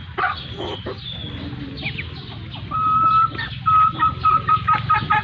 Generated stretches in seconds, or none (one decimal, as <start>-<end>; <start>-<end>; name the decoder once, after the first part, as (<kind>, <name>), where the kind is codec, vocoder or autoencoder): none